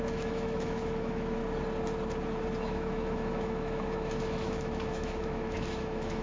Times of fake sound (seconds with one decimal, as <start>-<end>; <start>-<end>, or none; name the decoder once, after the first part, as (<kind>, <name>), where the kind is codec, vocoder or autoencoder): 0.0-1.4 (autoencoder, DAC-VAE); 2.7-6.2